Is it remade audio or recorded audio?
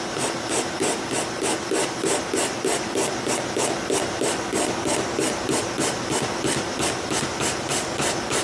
recorded